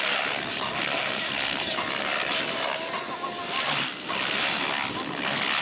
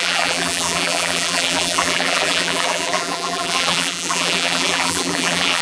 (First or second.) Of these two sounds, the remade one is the second